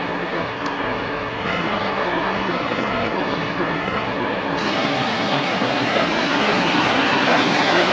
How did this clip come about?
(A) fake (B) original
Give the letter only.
A